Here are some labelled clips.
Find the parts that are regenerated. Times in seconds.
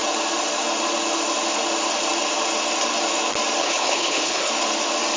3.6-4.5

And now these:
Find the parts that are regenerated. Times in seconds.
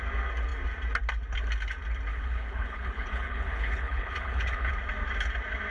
2.1-4.7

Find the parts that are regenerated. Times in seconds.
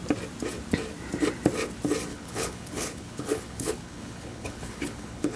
2.1-5.4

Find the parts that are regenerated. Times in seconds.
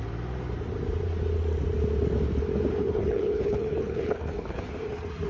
2.8-4.6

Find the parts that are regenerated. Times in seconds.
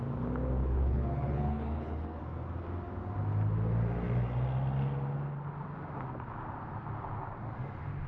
0.6-2.2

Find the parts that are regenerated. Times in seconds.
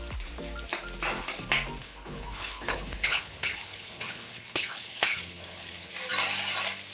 1.8-5.9